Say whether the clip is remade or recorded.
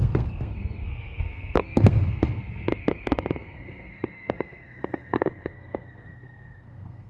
remade